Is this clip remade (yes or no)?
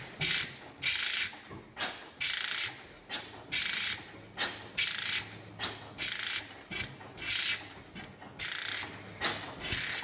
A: no